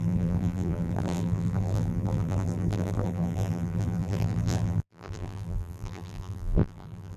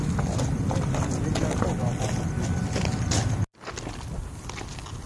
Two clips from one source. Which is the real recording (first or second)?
second